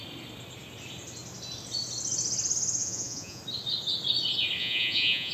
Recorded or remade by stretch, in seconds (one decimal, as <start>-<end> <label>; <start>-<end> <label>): 0.0-2.8 recorded; 2.8-3.4 remade; 3.4-4.6 recorded; 4.6-5.3 remade